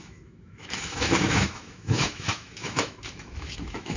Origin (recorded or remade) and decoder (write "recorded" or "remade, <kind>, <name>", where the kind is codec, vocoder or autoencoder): remade, autoencoder, DAC-VAE